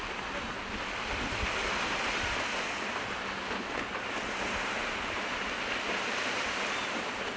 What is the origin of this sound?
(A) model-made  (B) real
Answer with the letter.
B